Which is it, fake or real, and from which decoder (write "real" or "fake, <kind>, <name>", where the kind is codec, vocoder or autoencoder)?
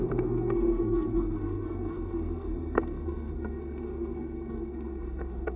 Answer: fake, codec, SNAC